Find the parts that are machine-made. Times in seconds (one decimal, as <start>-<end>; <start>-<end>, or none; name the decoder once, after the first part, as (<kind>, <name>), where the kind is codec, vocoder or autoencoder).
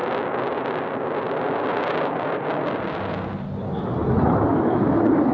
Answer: none